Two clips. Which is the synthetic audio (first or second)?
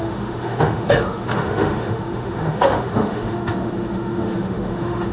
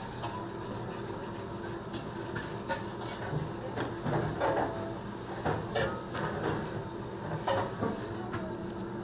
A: first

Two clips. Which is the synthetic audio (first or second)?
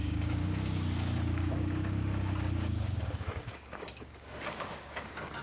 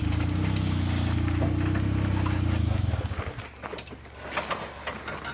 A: first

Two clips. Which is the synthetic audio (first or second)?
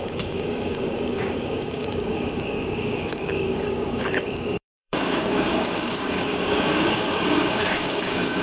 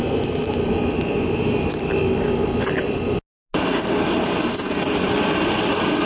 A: first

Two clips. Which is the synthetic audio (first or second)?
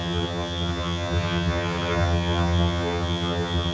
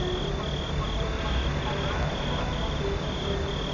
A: first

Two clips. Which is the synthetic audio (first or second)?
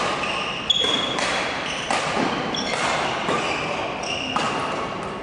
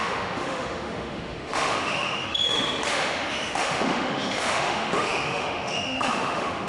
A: second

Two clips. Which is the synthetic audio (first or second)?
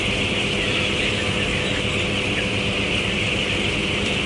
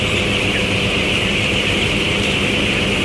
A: second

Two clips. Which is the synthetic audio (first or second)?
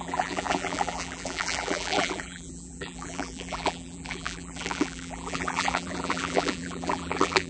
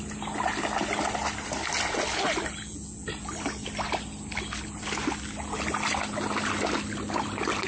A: first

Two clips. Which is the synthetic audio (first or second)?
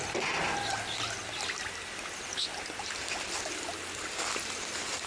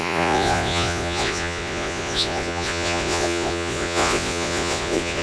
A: second